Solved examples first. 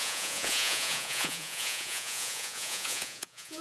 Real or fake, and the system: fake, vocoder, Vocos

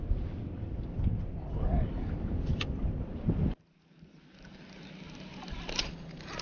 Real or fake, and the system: real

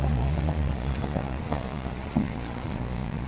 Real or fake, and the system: fake, vocoder, Vocos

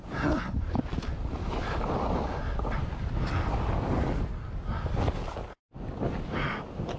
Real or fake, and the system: real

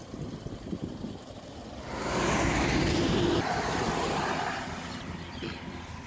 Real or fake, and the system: real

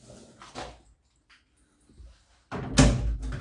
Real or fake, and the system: real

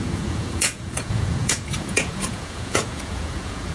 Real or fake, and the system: fake, vocoder, Vocos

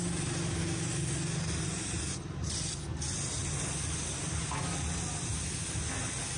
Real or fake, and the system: real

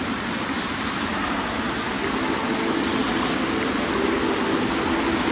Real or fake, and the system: real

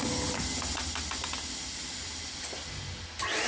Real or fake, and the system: real